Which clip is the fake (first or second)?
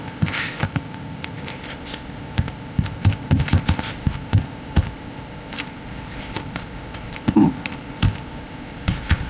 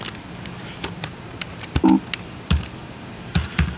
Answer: first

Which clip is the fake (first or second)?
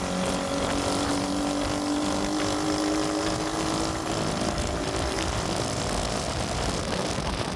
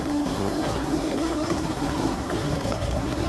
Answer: second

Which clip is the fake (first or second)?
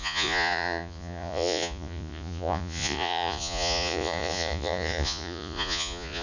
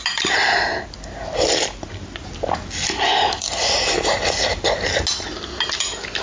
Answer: first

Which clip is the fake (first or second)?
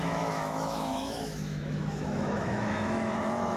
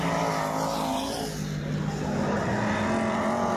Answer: first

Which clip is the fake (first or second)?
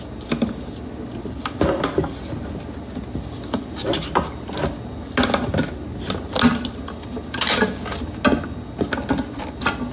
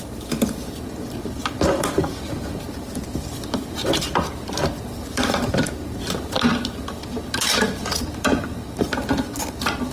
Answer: second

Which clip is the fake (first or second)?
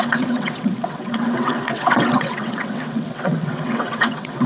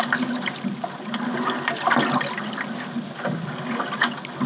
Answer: first